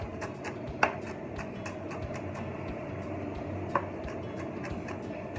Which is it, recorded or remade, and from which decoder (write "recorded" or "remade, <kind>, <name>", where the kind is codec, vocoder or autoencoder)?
recorded